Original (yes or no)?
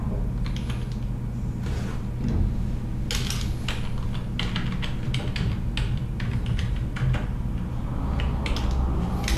yes